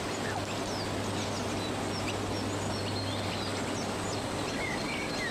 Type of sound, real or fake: real